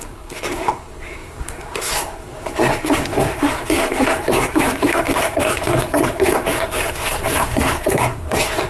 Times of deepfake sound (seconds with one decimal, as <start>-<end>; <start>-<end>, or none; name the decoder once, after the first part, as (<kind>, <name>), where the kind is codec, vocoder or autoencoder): 0.0-8.7 (codec, SNAC)